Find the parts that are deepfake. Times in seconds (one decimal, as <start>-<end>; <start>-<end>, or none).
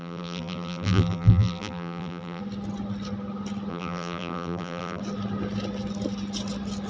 0.0-2.4; 3.7-5.0